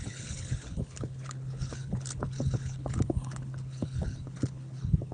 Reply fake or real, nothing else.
fake